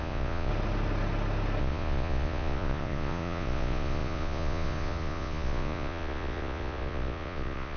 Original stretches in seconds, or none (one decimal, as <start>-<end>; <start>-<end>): 0.5-1.6